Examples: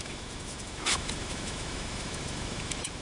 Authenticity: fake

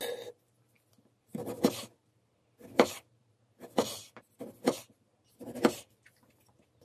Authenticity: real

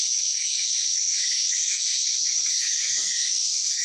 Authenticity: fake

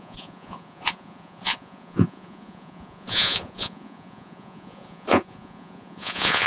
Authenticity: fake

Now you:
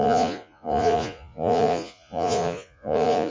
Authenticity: fake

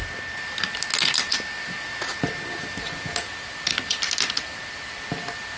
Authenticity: real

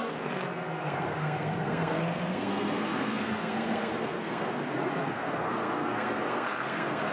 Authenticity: fake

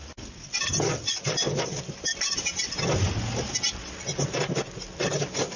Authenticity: real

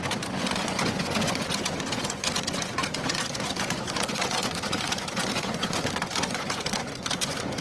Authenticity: fake